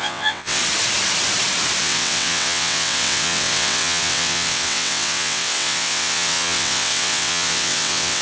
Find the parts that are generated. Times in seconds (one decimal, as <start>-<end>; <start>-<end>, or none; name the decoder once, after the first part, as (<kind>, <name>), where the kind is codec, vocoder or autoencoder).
0.0-0.6 (vocoder, WaveNeXt); 1.8-8.2